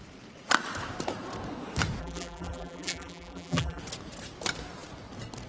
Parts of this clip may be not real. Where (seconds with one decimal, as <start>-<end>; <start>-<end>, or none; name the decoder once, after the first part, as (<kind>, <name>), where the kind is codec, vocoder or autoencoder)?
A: 2.0-3.8 (vocoder, BigVGAN v2)